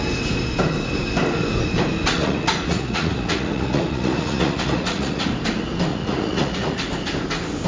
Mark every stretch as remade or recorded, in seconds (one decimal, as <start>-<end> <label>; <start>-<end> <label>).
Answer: 0.0-2.1 recorded; 2.1-5.3 remade; 5.3-5.9 recorded; 5.9-6.9 remade; 6.9-7.7 recorded